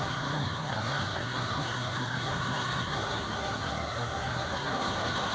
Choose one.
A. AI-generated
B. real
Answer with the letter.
A